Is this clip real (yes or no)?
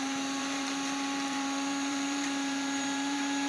no